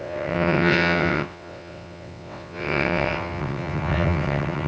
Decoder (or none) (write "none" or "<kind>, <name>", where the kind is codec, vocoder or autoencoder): vocoder, WaveNeXt